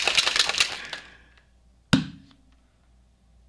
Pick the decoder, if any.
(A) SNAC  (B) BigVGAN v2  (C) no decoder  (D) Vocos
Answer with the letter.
C